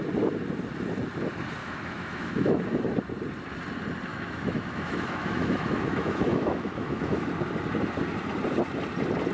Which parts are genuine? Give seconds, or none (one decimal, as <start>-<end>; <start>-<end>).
0.0-1.6; 2.8-4.1; 7.3-9.3